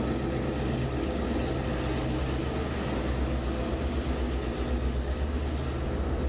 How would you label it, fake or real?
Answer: real